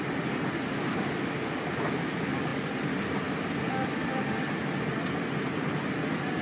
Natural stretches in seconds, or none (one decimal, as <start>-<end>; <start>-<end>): 0.0-6.4